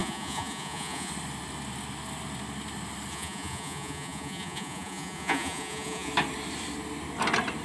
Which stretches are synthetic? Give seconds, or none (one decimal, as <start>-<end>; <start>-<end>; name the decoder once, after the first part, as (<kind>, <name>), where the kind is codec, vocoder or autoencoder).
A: 0.0-1.1 (vocoder, Vocos); 3.1-6.1